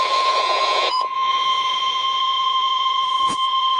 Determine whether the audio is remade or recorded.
remade